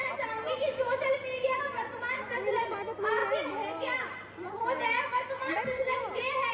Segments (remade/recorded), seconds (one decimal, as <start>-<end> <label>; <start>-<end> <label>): 0.0-3.2 remade; 3.2-5.5 recorded; 5.5-6.5 remade